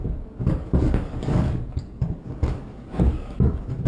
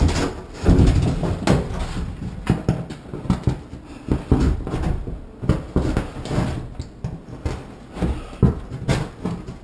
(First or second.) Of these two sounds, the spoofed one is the first